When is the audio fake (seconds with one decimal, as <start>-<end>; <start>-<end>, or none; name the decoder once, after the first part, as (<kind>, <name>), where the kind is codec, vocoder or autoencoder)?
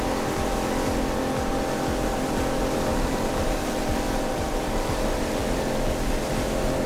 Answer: 2.9-5.5 (vocoder, BigVGAN v2)